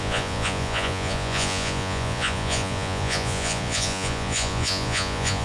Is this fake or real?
fake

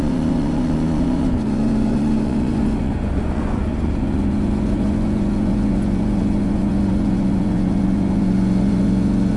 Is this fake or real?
fake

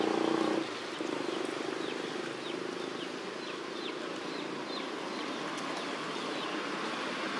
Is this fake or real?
real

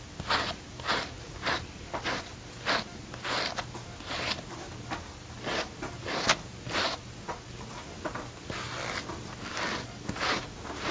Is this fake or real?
real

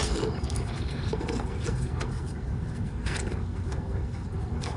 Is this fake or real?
fake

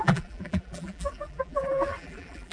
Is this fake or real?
fake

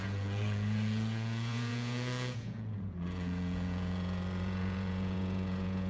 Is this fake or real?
fake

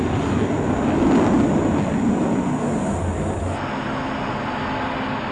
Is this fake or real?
real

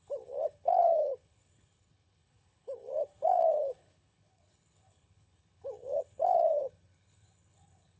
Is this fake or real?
fake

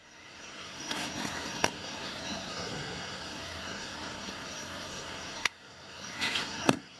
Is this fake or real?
fake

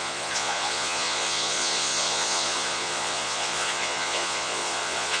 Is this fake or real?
fake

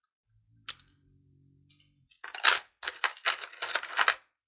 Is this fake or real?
real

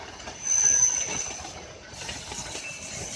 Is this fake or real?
real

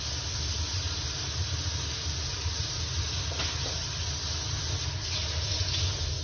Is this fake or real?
real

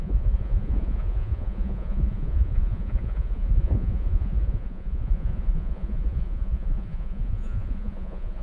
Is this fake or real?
fake